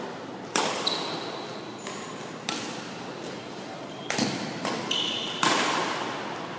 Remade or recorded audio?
remade